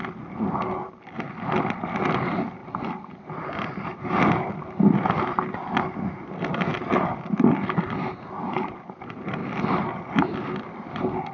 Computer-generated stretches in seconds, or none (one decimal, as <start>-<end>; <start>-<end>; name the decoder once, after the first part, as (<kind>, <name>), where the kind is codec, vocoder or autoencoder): none